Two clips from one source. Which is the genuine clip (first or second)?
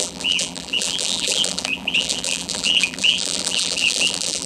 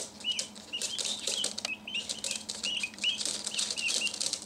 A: second